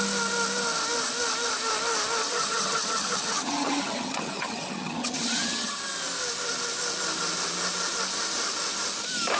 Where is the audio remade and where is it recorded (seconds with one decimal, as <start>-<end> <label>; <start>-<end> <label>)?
0.0-2.2 recorded; 2.2-5.8 remade; 5.8-9.4 recorded